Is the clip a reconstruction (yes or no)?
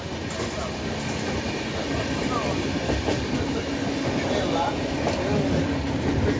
no